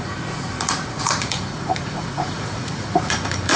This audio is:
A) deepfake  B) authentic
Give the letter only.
A